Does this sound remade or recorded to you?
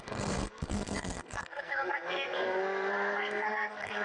remade